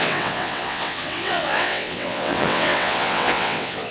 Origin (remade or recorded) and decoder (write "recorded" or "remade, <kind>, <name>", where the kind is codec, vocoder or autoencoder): remade, vocoder, WaveNeXt